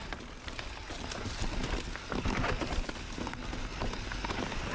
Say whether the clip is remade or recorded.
recorded